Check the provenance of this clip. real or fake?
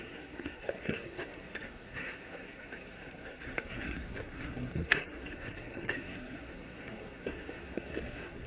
fake